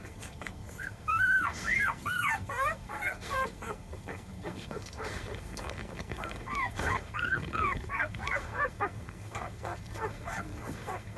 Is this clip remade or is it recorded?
remade